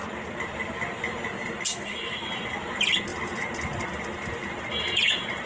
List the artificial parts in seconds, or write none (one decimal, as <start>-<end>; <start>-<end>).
1.7-2.3